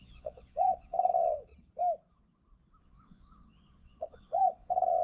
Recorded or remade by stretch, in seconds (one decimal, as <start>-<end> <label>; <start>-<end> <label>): 0.0-1.5 remade; 1.5-2.8 recorded; 2.8-5.0 remade